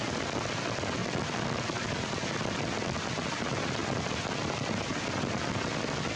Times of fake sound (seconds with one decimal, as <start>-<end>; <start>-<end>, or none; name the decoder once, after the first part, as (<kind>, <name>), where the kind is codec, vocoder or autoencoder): 1.0-2.1 (vocoder, BigVGAN v2)